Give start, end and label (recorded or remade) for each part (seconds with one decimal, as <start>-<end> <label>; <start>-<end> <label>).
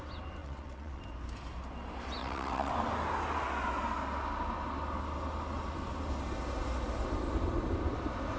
0.0-0.4 recorded; 0.4-1.0 remade; 1.0-2.2 recorded; 2.2-2.7 remade; 2.7-8.4 recorded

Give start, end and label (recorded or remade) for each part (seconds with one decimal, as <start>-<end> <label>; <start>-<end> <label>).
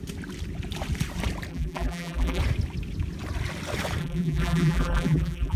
0.0-1.5 recorded; 1.5-2.4 remade; 2.4-4.0 recorded; 4.0-5.6 remade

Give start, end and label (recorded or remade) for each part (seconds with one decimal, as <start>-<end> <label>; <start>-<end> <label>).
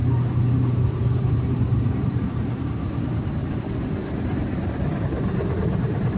0.0-0.8 recorded; 0.8-3.4 remade; 3.4-5.0 recorded; 5.0-6.2 remade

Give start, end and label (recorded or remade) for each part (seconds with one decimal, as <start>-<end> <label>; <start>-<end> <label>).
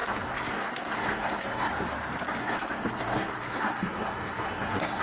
0.0-1.7 remade; 1.7-2.4 recorded; 2.4-5.0 remade